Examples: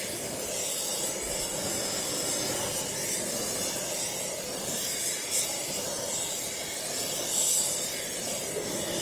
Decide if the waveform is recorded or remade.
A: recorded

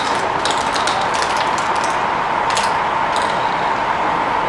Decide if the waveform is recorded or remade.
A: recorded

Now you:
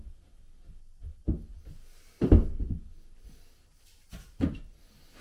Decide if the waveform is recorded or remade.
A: recorded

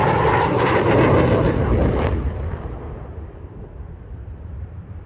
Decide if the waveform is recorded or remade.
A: remade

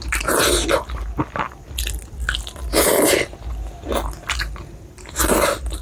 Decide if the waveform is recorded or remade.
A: recorded